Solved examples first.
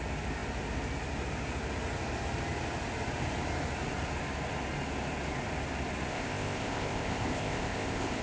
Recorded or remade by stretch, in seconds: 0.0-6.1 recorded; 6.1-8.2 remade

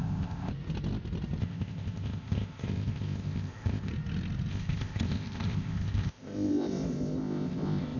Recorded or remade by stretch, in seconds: 0.0-0.5 remade; 0.5-1.4 recorded; 1.4-3.9 remade; 3.9-4.5 recorded; 4.5-8.0 remade

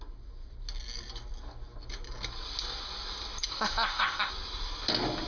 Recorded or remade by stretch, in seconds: 0.0-3.5 recorded; 3.5-4.3 remade; 4.3-5.3 recorded